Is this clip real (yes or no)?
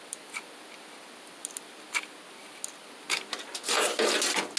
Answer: yes